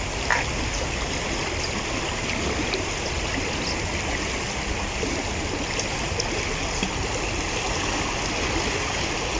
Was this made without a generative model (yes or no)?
yes